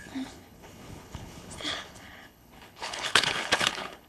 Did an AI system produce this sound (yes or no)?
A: yes